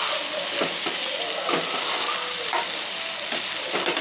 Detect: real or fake real